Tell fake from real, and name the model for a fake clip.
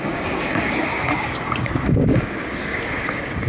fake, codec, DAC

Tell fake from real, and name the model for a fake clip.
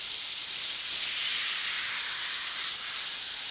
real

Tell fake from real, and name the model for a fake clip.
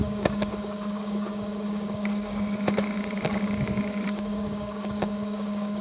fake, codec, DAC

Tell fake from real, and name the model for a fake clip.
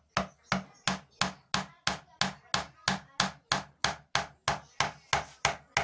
real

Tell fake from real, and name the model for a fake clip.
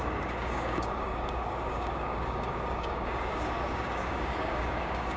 fake, codec, DAC